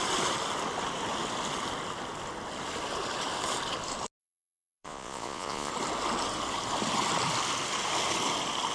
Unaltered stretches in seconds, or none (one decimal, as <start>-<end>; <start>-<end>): 0.0-4.2; 5.7-8.7